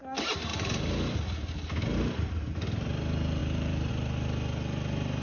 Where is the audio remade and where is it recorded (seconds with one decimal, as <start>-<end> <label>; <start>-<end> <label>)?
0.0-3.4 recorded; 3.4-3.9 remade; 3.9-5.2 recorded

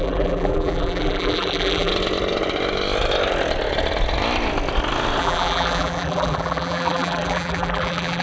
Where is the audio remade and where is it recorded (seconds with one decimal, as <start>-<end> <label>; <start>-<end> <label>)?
0.0-1.9 remade; 1.9-5.2 recorded; 5.2-8.2 remade

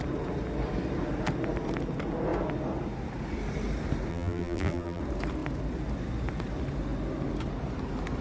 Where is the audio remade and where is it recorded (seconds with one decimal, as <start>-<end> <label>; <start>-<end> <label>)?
0.0-4.1 recorded; 4.1-5.0 remade; 5.0-8.2 recorded

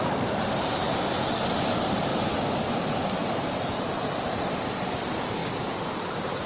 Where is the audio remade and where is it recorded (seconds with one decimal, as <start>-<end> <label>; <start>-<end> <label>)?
0.0-2.1 remade; 2.1-4.3 recorded; 4.3-5.4 remade; 5.4-6.0 recorded; 6.0-6.5 remade

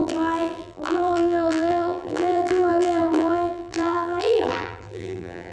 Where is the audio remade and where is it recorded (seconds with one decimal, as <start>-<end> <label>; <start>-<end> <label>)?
0.0-5.5 remade

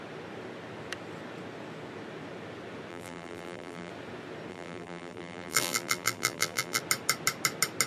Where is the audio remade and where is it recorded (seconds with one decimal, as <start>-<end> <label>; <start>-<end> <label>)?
0.0-2.9 recorded; 2.9-3.9 remade; 3.9-4.5 recorded; 4.5-6.8 remade; 6.8-7.9 recorded

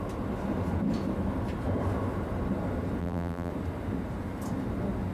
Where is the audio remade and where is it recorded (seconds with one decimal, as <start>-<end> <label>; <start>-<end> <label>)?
0.0-3.0 recorded; 3.0-3.5 remade; 3.5-5.1 recorded

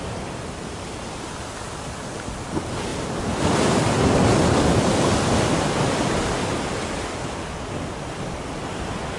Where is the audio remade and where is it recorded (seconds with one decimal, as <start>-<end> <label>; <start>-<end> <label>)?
0.0-2.9 recorded; 2.9-6.1 remade; 6.1-9.2 recorded